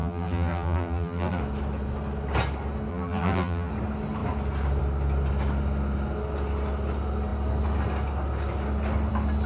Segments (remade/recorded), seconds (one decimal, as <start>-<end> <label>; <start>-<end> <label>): 0.0-1.4 remade; 1.4-2.9 recorded; 2.9-3.7 remade; 3.7-9.5 recorded